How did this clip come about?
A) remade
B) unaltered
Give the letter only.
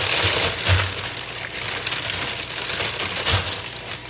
B